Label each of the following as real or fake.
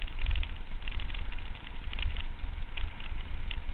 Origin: real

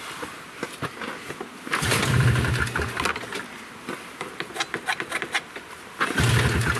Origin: real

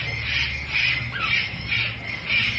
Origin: real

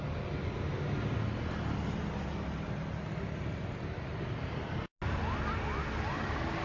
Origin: real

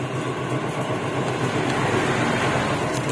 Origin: real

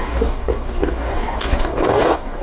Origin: fake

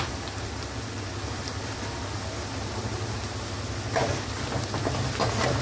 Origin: real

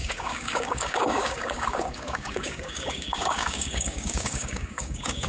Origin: fake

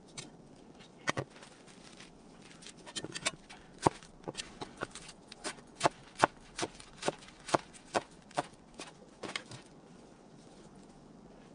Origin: fake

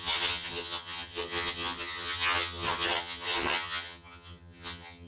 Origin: fake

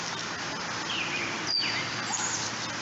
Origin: real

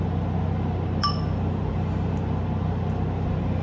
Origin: real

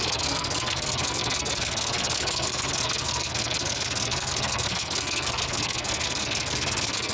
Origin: fake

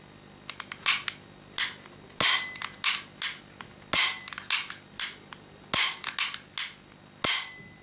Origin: real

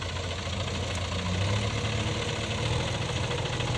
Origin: real